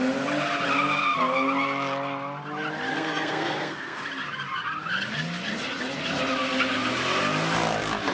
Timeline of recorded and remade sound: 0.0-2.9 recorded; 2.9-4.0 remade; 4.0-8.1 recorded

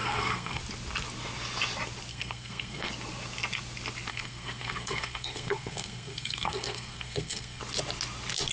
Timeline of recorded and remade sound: 0.0-0.6 remade; 0.6-2.1 recorded; 2.1-2.9 remade; 2.9-4.1 recorded; 4.1-7.6 remade; 7.6-8.5 recorded

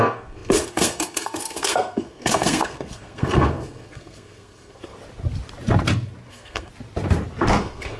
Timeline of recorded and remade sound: 0.0-4.9 remade; 4.9-6.3 recorded; 6.3-6.7 remade; 6.7-7.6 recorded; 7.6-8.0 remade

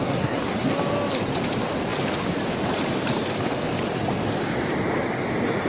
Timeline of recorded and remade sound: 0.0-0.5 remade; 0.5-5.7 recorded

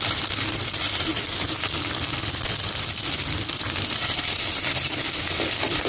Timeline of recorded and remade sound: 0.0-5.9 recorded

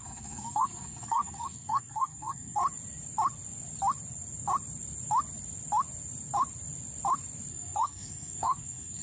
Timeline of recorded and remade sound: 0.0-2.6 remade; 2.6-7.5 recorded; 7.5-9.0 remade

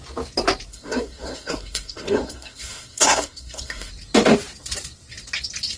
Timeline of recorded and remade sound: 0.0-0.7 recorded; 0.7-3.9 remade; 3.9-5.8 recorded

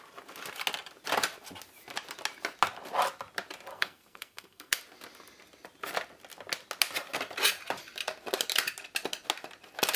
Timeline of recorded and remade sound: 0.0-3.7 recorded; 3.7-4.8 remade; 4.8-10.0 recorded